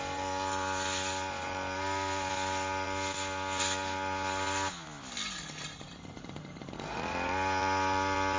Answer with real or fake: real